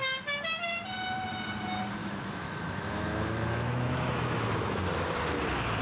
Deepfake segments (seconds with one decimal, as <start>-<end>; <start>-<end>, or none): 2.0-4.8